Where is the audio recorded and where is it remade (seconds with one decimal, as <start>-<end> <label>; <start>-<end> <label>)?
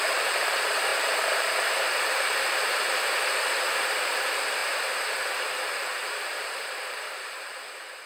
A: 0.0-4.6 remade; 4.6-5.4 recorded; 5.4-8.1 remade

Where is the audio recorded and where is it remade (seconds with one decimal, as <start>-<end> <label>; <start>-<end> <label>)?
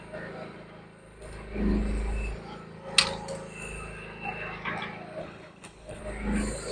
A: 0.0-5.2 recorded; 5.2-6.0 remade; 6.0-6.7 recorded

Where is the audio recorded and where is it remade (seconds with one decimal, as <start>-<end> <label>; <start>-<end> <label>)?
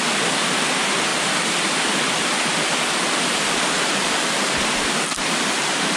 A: 0.0-1.1 recorded; 1.1-4.7 remade; 4.7-6.0 recorded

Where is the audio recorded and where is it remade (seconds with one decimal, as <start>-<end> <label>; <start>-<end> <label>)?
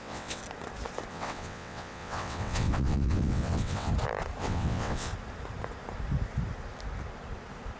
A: 0.0-0.4 remade; 0.4-1.1 recorded; 1.1-3.9 remade; 3.9-4.4 recorded; 4.4-5.1 remade; 5.1-7.8 recorded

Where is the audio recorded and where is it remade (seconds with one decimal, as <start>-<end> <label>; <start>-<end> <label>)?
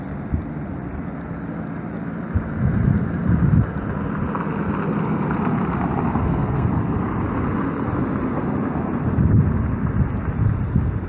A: 0.0-6.1 recorded; 6.1-6.7 remade; 6.7-11.1 recorded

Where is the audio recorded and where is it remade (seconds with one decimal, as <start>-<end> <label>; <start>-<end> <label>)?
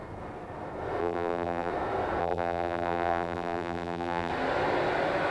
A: 0.0-1.0 recorded; 1.0-1.7 remade; 1.7-2.2 recorded; 2.2-4.3 remade; 4.3-5.3 recorded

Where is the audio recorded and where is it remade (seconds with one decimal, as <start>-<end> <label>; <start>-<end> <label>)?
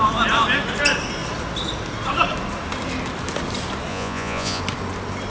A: 0.0-3.9 recorded; 3.9-4.6 remade; 4.6-5.3 recorded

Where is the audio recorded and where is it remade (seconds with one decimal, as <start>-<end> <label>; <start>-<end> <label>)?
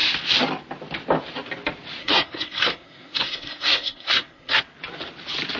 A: 0.0-2.0 recorded; 2.0-4.6 remade; 4.6-5.6 recorded